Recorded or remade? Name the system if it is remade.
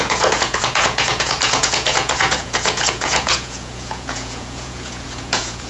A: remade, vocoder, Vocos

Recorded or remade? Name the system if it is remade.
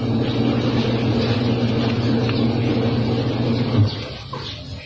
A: recorded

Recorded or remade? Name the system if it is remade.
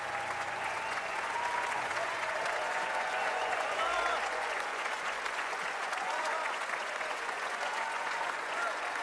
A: remade, vocoder, Vocos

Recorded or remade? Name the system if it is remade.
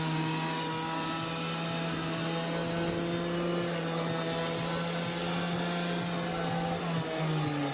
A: recorded